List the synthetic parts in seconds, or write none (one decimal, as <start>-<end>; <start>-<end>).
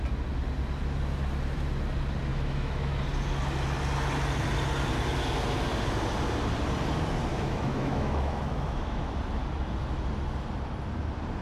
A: 2.3-2.9; 7.3-9.1